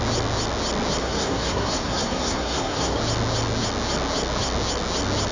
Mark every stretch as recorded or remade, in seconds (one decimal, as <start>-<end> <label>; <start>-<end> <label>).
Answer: 0.0-1.0 recorded; 1.0-3.0 remade; 3.0-5.3 recorded